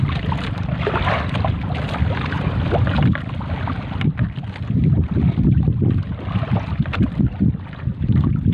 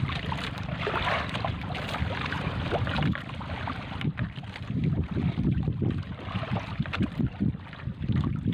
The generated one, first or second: second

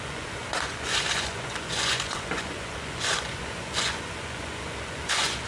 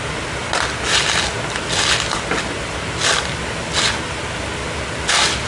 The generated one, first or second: first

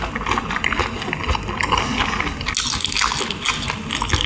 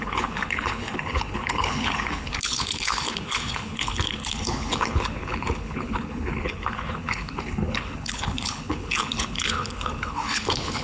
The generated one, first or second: second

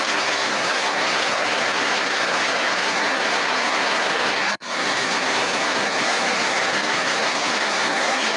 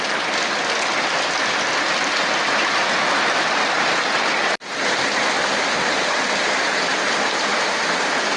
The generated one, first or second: first